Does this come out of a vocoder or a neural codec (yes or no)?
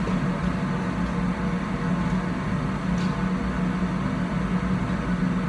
no